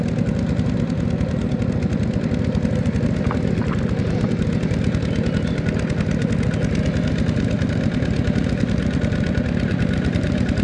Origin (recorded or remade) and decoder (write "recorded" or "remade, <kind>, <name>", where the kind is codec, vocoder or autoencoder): recorded